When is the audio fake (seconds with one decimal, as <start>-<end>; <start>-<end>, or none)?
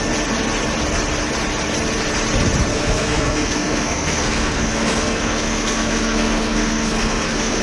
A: 2.7-7.6